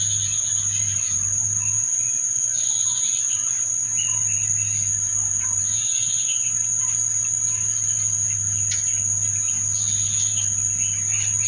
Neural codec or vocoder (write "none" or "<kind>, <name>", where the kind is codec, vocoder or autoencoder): none